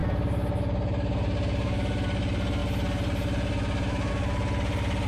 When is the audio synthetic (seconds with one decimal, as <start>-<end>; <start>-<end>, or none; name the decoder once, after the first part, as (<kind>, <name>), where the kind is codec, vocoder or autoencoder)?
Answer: none